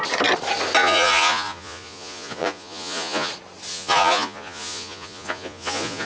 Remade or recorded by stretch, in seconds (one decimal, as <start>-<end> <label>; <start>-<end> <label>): 0.0-0.8 recorded; 0.8-3.3 remade; 3.3-3.7 recorded; 3.7-6.1 remade